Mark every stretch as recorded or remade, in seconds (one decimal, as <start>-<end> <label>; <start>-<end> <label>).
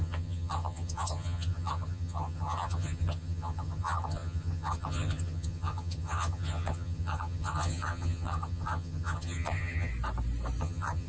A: 0.0-9.9 remade; 9.9-10.6 recorded; 10.6-11.1 remade